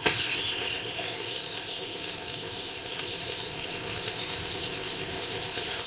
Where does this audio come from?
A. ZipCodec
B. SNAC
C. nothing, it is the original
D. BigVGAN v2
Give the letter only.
A